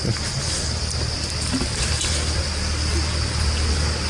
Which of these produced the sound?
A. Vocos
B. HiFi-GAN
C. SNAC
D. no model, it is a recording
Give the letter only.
D